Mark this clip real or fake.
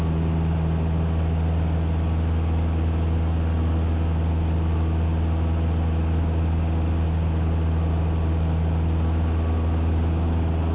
real